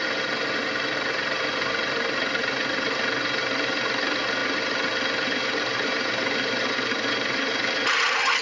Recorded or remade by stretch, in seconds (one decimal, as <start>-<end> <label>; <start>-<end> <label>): 0.0-8.4 recorded